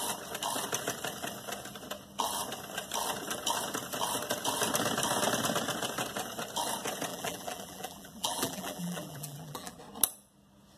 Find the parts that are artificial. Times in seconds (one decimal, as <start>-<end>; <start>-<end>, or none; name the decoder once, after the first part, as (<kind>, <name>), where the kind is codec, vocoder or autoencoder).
7.1-9.8 (vocoder, BigVGAN v2)